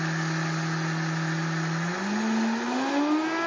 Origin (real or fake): real